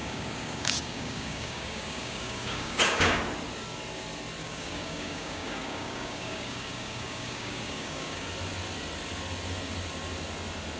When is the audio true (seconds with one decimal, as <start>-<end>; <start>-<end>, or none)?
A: 3.2-4.4; 8.3-10.8

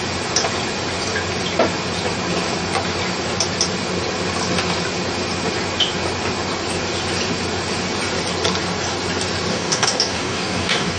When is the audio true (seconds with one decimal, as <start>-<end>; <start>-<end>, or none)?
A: 0.0-9.5

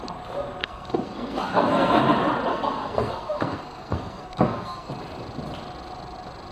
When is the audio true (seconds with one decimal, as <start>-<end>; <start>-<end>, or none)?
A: 0.0-0.6; 2.0-2.5; 4.9-6.5

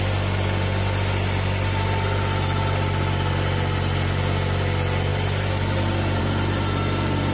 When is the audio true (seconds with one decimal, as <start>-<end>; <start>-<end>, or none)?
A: 0.0-5.1; 6.2-7.3

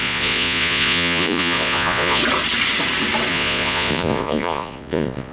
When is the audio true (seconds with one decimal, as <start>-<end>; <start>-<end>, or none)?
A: 2.2-3.3